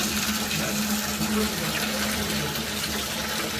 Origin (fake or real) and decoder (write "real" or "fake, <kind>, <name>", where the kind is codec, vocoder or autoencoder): real